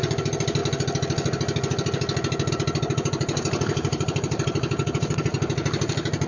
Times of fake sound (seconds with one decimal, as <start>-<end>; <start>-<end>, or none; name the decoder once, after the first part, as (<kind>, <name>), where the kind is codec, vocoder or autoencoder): 0.0-0.6 (vocoder, BigVGAN v2); 2.5-5.3